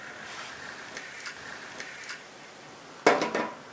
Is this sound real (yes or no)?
yes